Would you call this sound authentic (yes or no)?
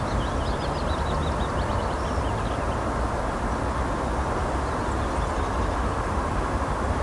yes